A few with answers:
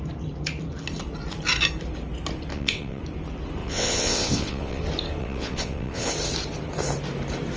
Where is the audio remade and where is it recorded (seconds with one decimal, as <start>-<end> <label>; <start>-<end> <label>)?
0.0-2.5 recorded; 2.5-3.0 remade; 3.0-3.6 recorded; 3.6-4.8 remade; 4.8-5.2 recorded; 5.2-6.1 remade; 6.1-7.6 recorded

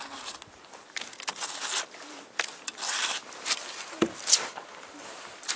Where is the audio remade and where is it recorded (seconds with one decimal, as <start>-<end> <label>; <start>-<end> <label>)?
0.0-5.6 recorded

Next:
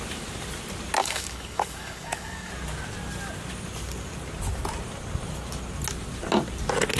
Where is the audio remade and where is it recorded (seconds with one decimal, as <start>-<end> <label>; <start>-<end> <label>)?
0.0-1.0 recorded; 1.0-2.5 remade; 2.5-7.0 recorded

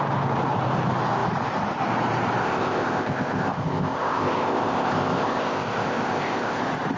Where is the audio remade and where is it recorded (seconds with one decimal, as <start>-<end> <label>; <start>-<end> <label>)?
0.0-2.4 recorded; 2.4-6.6 remade; 6.6-7.0 recorded